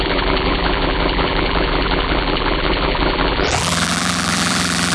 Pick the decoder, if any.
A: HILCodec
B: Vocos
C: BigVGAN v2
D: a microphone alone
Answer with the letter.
C